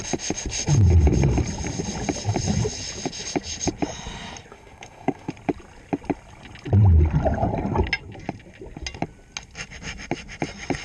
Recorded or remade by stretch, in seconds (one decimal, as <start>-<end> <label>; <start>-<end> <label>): 0.0-4.5 recorded; 4.5-5.3 remade; 5.3-10.8 recorded